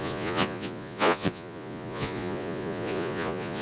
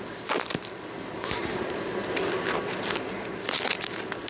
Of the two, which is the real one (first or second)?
second